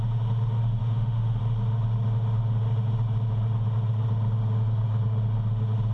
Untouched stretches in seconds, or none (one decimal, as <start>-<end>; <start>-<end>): 0.0-0.8; 1.4-5.9